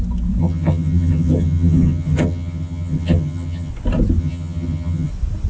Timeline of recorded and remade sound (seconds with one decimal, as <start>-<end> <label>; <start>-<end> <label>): 0.0-0.4 recorded; 0.4-3.7 remade; 3.7-4.2 recorded; 4.2-5.1 remade; 5.1-5.5 recorded